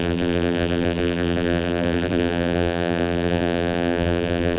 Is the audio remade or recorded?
remade